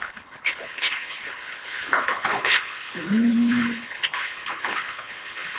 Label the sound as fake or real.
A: fake